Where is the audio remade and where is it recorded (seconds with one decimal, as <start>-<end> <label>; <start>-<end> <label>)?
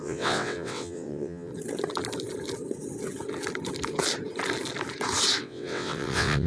0.0-1.5 remade; 1.5-5.4 recorded; 5.4-6.5 remade